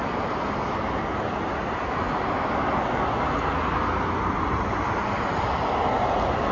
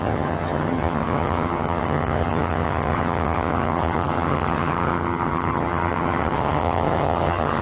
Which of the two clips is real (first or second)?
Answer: first